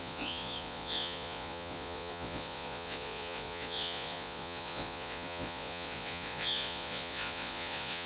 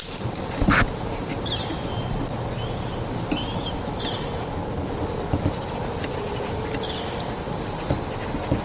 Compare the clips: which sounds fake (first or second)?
first